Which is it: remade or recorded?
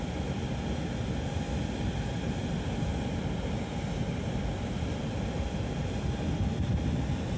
recorded